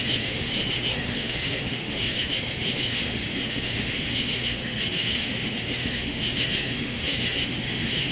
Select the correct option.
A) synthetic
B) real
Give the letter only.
A